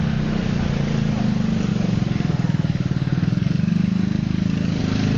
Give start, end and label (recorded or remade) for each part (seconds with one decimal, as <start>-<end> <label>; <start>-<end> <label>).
0.0-1.7 recorded; 1.7-4.8 remade; 4.8-5.2 recorded